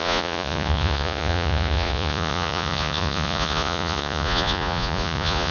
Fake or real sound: fake